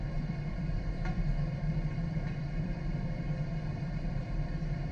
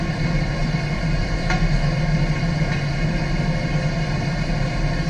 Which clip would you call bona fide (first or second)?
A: second